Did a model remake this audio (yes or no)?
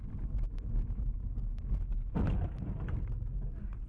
no